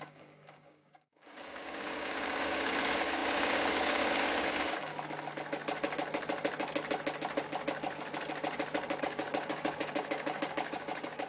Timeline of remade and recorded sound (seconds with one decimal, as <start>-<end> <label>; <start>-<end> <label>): 0.0-4.9 remade; 4.9-9.0 recorded; 9.0-11.3 remade